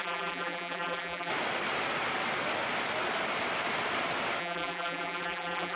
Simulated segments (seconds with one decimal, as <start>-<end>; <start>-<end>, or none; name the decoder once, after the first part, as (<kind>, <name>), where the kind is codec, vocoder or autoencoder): 0.0-1.3 (vocoder, BigVGAN v2); 4.4-5.8